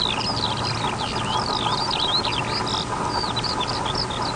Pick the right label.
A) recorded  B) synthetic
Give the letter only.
A